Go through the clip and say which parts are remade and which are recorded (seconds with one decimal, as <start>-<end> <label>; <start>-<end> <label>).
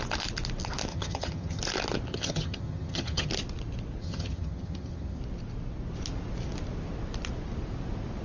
0.0-0.9 recorded; 0.9-1.6 remade; 1.6-2.1 recorded; 2.1-3.3 remade; 3.3-4.0 recorded; 4.0-5.2 remade; 5.2-8.2 recorded